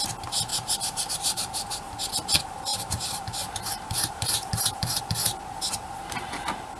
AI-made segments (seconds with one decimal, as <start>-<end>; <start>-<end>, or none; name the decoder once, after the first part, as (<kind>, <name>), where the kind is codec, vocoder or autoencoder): 0.5-1.9 (vocoder, BigVGAN v2); 2.7-5.0